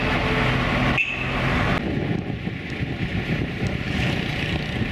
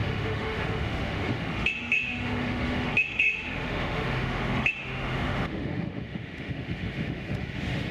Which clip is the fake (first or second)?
second